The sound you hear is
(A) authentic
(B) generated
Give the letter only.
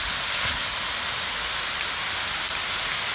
A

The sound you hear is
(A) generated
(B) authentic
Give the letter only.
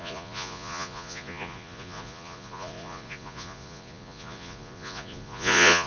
A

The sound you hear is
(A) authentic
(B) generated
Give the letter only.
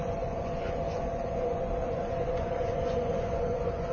B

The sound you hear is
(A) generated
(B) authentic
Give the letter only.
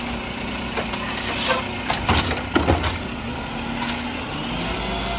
B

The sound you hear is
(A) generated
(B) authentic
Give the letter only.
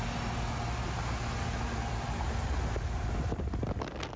B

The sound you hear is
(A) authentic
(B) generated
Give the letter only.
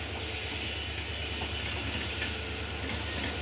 A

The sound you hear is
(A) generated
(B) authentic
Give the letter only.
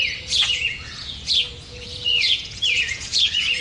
A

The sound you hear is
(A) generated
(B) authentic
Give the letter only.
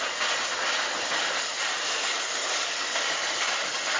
B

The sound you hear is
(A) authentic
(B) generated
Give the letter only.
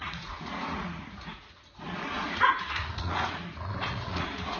B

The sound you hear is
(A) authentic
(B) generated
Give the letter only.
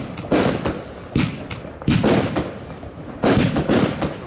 A